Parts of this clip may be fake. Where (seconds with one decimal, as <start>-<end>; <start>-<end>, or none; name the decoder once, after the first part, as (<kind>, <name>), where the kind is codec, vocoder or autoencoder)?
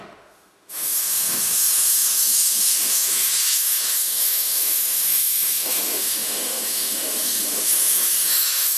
0.0-8.8 (autoencoder, DAC-VAE)